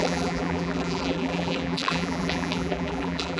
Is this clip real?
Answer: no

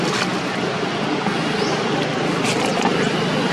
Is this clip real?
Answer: yes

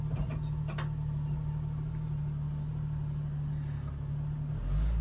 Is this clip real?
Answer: yes